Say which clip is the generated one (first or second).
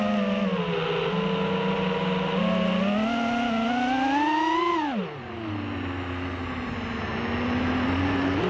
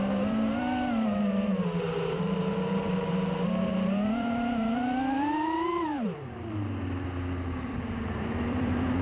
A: second